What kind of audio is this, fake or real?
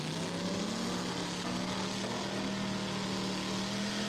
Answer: real